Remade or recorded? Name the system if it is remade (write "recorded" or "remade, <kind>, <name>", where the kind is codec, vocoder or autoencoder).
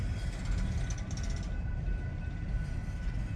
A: recorded